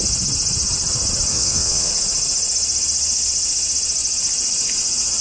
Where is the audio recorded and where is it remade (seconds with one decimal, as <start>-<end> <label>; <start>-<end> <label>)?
0.0-1.3 recorded; 1.3-1.9 remade; 1.9-5.2 recorded